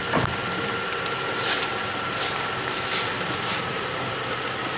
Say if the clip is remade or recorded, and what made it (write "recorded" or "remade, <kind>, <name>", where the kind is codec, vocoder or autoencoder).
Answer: recorded